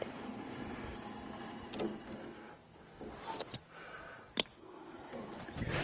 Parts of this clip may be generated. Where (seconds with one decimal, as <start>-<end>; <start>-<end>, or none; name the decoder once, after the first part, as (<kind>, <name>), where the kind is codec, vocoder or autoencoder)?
4.5-5.1 (autoencoder, DAC-VAE)